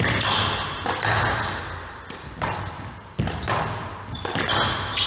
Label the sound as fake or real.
real